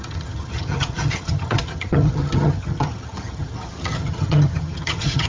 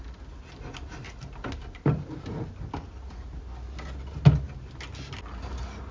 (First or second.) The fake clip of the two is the first